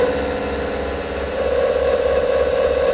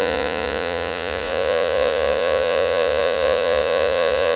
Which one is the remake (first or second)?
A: second